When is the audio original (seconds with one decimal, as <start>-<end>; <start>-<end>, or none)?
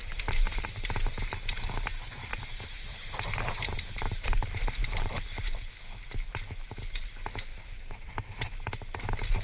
0.9-2.3; 5.7-7.5; 8.3-9.4